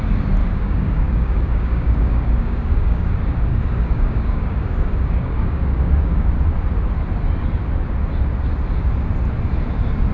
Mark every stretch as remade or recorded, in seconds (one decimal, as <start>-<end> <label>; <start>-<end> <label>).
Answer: 0.0-0.4 recorded; 0.4-3.1 remade; 3.1-3.5 recorded; 3.5-6.3 remade; 6.3-10.1 recorded